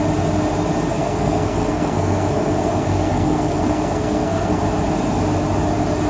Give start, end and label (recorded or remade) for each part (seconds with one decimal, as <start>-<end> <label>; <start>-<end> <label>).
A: 0.0-0.9 recorded; 0.9-4.6 remade; 4.6-6.1 recorded